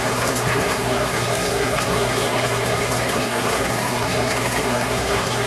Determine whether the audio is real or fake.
fake